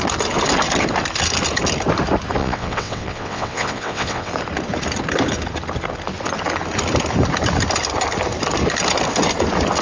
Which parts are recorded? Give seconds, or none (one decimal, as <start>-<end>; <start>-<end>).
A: 0.0-2.4; 4.3-9.8